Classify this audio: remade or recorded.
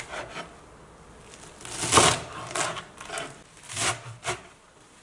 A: recorded